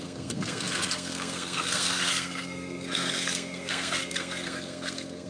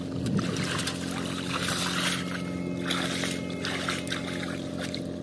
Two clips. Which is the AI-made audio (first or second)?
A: first